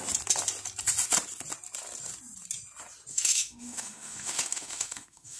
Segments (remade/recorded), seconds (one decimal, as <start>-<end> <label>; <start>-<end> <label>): 0.0-3.1 recorded; 3.1-5.4 remade